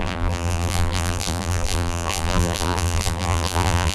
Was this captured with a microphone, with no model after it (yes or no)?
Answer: no